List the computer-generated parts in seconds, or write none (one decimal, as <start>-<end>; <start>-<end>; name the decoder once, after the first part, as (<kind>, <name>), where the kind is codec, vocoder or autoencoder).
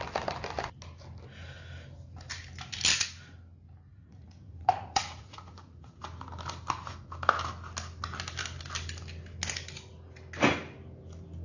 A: 3.9-6.0 (vocoder, Vocos)